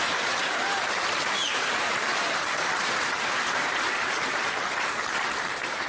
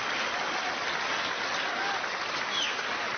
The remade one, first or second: first